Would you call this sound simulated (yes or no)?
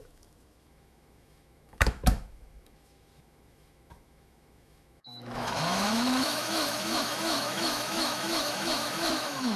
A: yes